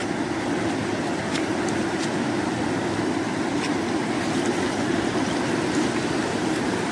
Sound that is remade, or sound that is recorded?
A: recorded